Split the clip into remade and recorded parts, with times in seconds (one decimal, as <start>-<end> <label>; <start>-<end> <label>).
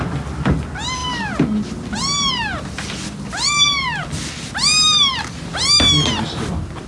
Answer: 0.0-6.9 recorded